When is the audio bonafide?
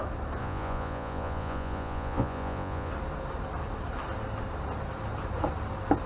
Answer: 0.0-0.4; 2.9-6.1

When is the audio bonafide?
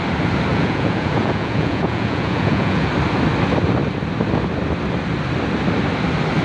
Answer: 0.0-0.5; 2.9-6.4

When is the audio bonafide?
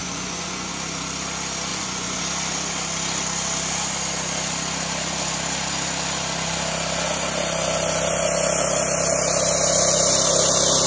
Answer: 0.7-1.7; 2.2-10.9